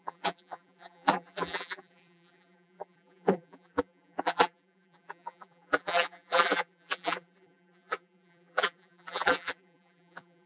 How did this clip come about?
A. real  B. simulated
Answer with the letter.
B